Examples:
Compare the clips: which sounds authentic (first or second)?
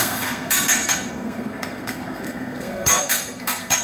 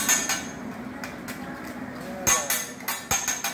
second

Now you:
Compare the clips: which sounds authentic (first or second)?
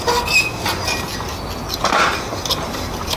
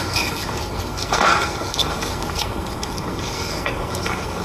first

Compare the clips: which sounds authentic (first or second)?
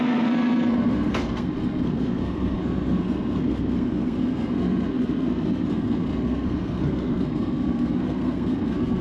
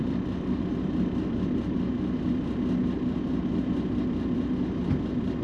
second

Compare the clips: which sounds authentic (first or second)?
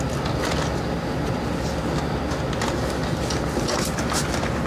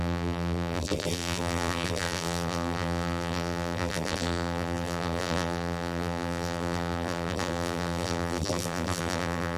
first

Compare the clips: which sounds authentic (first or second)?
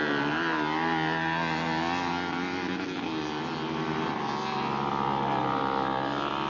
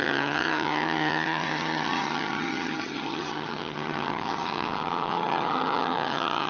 first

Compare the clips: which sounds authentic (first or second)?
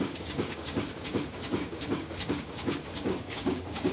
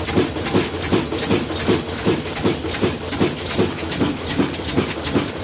second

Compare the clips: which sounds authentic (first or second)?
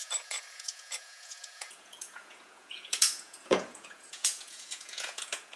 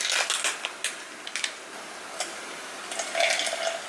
second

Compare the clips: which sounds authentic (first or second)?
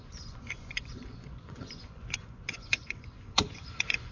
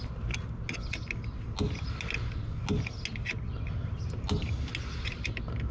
second